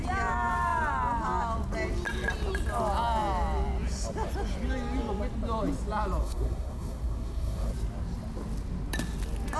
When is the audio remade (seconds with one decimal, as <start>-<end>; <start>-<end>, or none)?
6.2-7.7

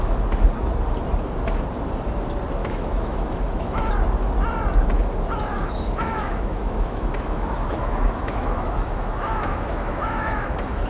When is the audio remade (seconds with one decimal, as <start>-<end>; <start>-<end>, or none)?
2.6-3.9; 5.5-10.9

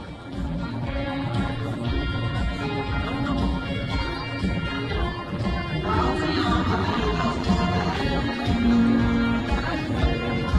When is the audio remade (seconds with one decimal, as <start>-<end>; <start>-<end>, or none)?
0.0-8.8; 9.4-10.6

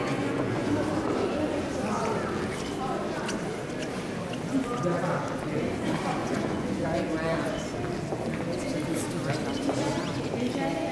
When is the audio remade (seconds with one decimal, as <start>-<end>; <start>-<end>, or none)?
0.0-0.7; 6.2-7.1

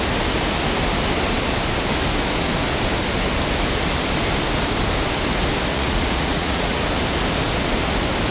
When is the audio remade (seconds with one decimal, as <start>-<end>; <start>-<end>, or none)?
5.7-6.8

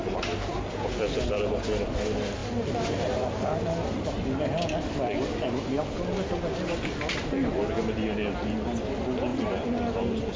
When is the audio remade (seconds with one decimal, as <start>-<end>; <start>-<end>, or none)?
none

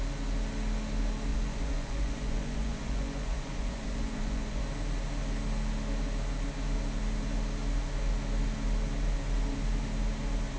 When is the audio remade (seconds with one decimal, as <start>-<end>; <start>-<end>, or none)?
1.3-4.6

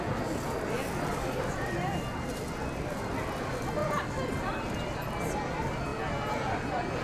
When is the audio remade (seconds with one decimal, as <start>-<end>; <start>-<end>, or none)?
none